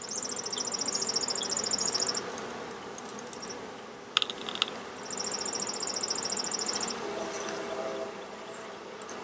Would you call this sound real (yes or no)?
yes